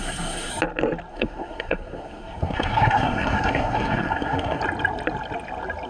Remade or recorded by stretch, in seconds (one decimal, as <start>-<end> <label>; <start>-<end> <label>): 0.0-0.5 remade; 0.5-1.1 recorded; 1.1-4.6 remade; 4.6-5.9 recorded